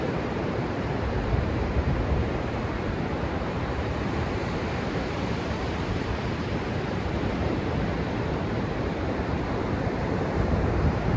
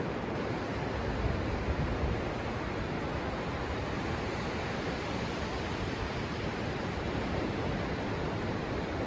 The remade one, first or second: first